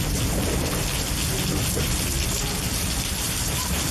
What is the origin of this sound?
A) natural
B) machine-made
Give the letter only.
A